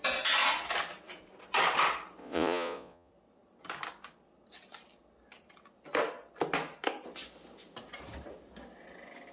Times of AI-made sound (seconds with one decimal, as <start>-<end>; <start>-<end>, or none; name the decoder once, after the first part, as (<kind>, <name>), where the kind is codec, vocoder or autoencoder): 2.2-3.1 (vocoder, Vocos)